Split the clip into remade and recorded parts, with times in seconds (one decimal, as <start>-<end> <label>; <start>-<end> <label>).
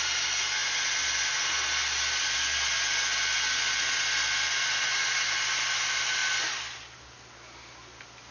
0.0-8.3 recorded